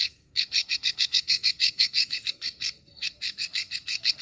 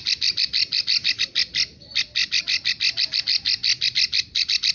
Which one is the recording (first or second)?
second